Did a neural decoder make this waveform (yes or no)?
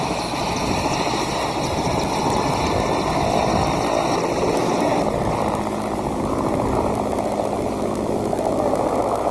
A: no